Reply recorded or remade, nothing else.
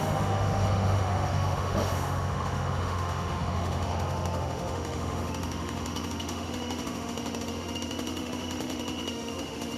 remade